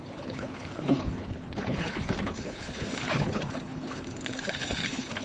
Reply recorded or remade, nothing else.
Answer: remade